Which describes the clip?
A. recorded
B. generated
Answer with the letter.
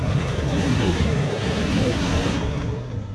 B